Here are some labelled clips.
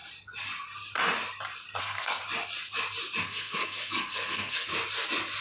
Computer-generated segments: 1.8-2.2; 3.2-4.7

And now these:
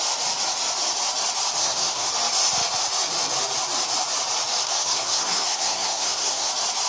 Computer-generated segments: 1.6-2.1; 4.6-6.5

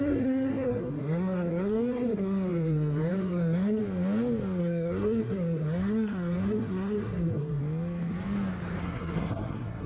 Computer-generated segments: 0.0-3.8; 4.6-7.6; 8.8-9.9